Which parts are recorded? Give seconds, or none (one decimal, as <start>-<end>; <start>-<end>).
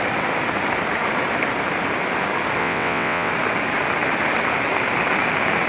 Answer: 0.0-2.6; 3.3-5.7